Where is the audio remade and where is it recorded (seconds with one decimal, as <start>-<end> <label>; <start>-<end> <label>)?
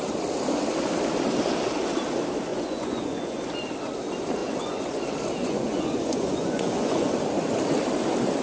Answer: 0.0-2.5 recorded; 2.5-3.4 remade; 3.4-4.4 recorded; 4.4-5.0 remade; 5.0-5.4 recorded; 5.4-7.1 remade; 7.1-8.4 recorded